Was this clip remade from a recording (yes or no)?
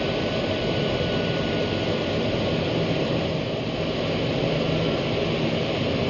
no